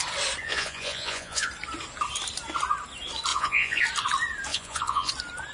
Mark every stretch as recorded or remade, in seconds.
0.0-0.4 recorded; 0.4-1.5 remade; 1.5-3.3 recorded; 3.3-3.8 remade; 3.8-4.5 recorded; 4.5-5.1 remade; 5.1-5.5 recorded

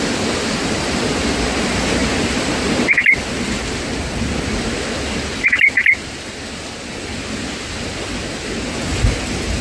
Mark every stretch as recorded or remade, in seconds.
0.0-9.6 recorded

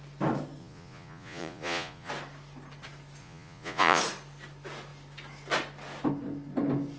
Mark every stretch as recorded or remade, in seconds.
0.0-0.6 recorded; 0.6-2.1 remade; 2.1-3.2 recorded; 3.2-4.0 remade; 4.0-7.0 recorded

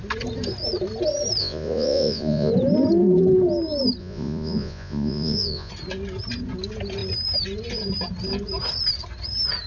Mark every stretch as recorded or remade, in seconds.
0.0-1.4 recorded; 1.4-2.5 remade; 2.5-4.0 recorded; 4.0-5.7 remade; 5.7-9.7 recorded